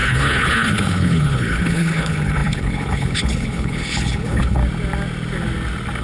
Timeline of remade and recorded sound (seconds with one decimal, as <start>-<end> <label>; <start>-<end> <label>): 0.0-4.6 remade; 4.6-6.0 recorded